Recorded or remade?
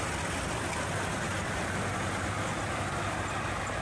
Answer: remade